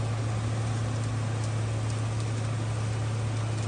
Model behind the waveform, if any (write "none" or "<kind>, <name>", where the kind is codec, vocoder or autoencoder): none